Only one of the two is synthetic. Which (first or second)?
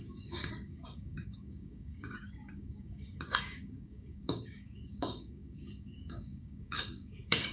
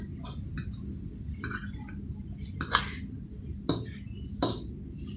first